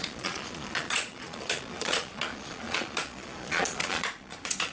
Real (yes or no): no